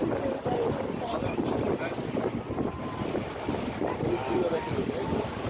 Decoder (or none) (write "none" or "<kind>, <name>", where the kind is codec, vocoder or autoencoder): vocoder, BigVGAN v2